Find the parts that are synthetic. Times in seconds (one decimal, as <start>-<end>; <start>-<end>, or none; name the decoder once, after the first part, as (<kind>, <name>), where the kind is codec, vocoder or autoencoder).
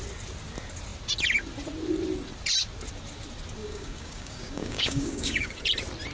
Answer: 3.6-5.6 (codec, DAC)